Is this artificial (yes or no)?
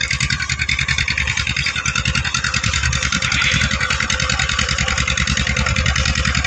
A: no